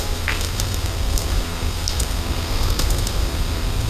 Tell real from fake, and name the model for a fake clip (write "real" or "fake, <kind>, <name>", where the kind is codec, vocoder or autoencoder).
fake, codec, SNAC